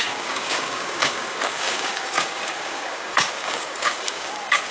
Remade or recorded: remade